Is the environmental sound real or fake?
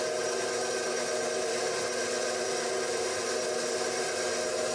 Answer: real